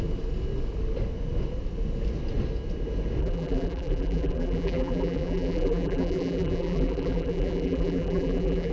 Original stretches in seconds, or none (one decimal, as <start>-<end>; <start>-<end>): 0.0-3.2